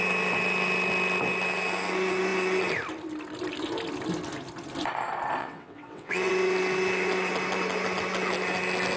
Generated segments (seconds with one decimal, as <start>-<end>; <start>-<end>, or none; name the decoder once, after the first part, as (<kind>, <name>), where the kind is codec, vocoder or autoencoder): 5.4-6.3 (vocoder, WaveNeXt)